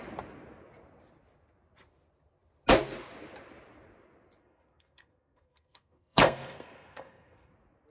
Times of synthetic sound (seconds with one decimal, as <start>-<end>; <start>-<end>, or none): 4.4-7.5

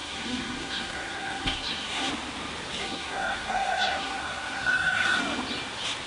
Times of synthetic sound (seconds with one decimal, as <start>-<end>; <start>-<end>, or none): 0.0-2.1; 2.8-5.2